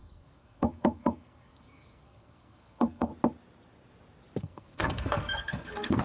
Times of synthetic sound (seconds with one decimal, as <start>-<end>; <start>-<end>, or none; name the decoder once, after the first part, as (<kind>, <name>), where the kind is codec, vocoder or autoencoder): 0.0-3.1 (codec, SNAC); 4.4-6.0